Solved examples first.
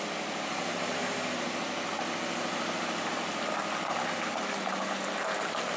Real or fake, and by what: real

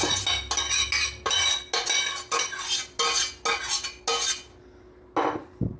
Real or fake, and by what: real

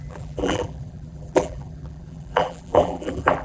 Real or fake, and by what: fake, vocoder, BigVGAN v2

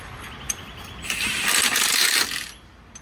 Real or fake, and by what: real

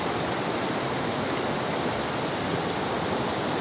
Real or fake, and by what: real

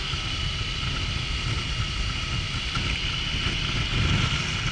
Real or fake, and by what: real